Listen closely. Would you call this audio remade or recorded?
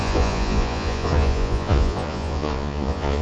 remade